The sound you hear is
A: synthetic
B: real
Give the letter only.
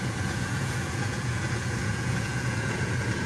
A